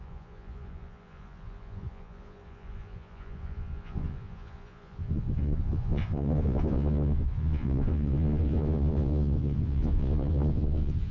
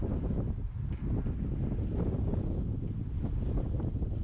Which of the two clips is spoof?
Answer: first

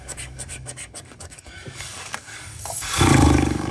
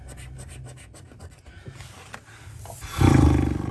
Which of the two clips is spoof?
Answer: first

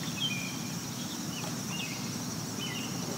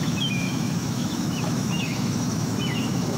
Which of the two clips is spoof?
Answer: second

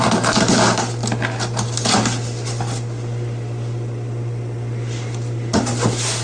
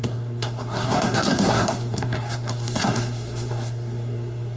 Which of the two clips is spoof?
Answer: second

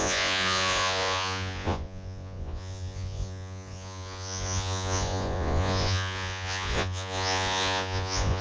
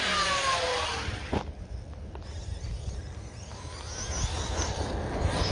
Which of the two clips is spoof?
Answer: first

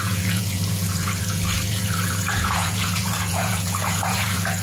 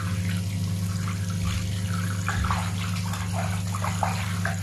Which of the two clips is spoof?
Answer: first